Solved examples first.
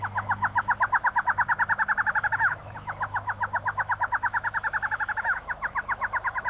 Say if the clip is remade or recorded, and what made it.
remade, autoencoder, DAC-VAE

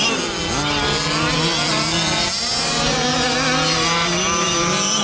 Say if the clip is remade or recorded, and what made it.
recorded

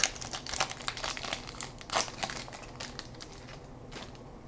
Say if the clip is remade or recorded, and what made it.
recorded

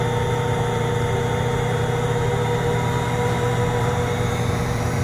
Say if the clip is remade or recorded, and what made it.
remade, vocoder, BigVGAN v2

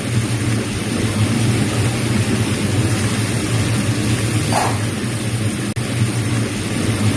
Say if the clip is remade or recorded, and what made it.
recorded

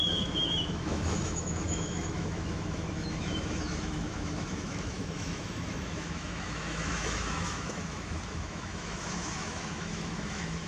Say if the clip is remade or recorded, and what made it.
remade, autoencoder, DAC-VAE